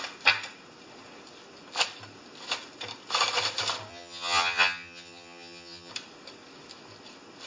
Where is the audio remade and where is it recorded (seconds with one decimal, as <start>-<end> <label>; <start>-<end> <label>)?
0.0-3.9 recorded; 3.9-5.9 remade; 5.9-7.5 recorded